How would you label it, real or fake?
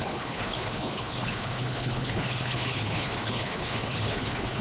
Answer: fake